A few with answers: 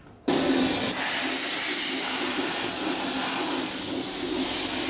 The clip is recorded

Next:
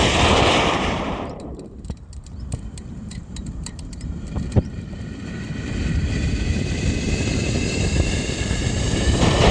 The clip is remade